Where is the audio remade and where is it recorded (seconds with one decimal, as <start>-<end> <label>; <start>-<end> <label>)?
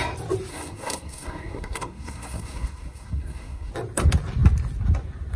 0.0-0.5 recorded; 0.5-3.7 remade; 3.7-5.4 recorded